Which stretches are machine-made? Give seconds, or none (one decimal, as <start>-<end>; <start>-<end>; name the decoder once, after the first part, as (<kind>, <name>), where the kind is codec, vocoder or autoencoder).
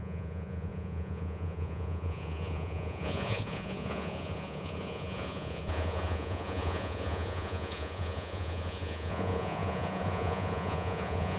0.0-11.4 (vocoder, Vocos)